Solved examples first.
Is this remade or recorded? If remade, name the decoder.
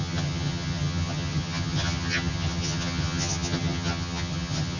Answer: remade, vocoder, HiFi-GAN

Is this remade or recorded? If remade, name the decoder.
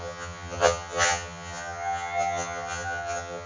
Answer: remade, vocoder, HiFi-GAN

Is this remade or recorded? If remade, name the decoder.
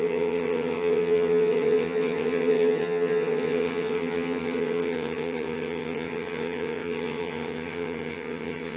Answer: remade, vocoder, HiFi-GAN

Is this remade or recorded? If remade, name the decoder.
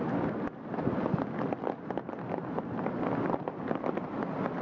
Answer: recorded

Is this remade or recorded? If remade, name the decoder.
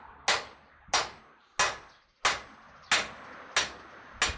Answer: recorded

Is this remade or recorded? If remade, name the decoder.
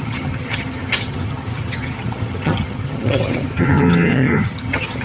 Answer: remade, vocoder, HiFi-GAN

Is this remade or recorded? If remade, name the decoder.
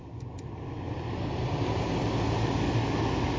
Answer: recorded